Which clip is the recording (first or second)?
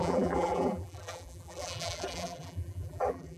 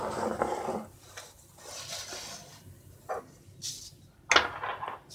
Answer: second